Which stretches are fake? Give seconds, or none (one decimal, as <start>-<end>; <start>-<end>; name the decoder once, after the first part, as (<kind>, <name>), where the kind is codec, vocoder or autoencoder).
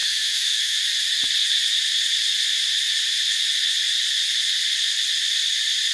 0.0-0.8 (autoencoder, DAC-VAE)